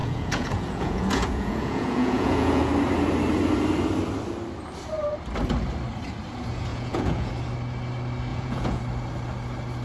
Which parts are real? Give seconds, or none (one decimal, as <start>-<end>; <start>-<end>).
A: 2.7-6.7; 7.3-8.3; 8.8-9.8